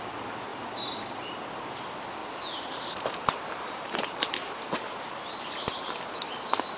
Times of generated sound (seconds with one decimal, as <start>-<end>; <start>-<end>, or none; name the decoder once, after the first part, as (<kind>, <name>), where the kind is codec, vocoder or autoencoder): 2.2-5.8 (vocoder, BigVGAN v2)

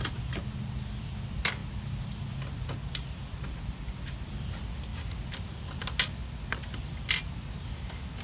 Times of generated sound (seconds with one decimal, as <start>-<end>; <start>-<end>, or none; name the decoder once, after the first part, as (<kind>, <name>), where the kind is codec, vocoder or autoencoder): 4.9-5.5 (vocoder, BigVGAN v2)

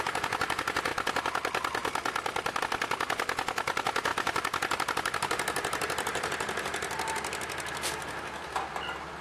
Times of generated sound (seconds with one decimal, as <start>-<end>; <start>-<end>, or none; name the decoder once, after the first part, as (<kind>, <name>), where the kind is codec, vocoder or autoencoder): 0.0-0.9 (vocoder, BigVGAN v2); 2.6-9.2